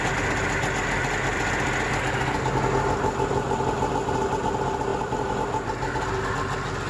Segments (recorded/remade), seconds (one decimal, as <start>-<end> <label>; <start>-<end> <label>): 0.0-6.9 recorded